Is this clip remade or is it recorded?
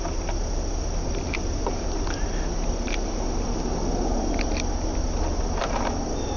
recorded